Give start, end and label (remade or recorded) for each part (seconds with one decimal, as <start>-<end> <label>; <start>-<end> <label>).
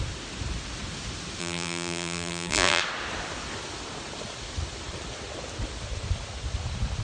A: 0.0-1.4 recorded; 1.4-2.8 remade; 2.8-7.0 recorded